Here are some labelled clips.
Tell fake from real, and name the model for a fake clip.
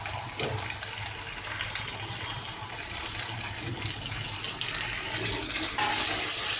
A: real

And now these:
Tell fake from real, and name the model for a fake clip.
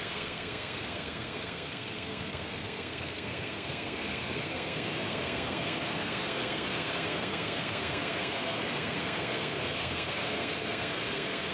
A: fake, codec, SNAC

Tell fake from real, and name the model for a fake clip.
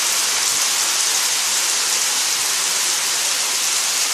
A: real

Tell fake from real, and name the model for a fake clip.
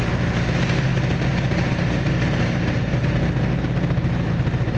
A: real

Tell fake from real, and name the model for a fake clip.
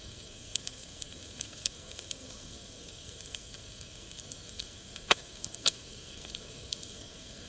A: fake, codec, SNAC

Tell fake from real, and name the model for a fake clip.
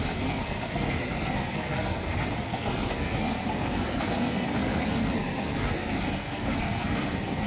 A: fake, codec, SNAC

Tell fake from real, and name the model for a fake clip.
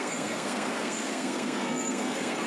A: fake, codec, SNAC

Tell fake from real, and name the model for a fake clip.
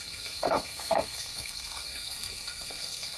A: fake, codec, SNAC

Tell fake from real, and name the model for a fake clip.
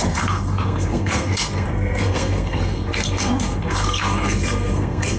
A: fake, codec, SNAC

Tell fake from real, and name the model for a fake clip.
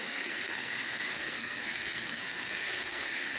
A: fake, codec, SNAC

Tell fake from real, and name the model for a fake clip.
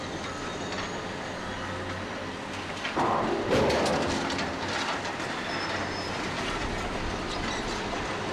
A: real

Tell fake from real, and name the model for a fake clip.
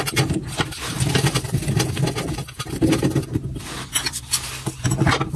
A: real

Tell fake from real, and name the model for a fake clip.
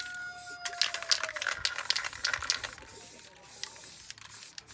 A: real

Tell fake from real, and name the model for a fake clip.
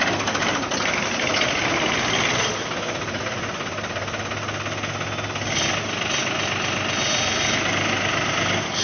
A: real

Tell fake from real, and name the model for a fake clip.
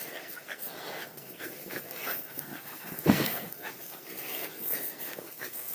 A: fake, codec, SNAC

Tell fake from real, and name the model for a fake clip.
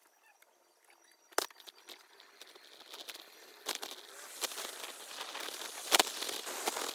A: real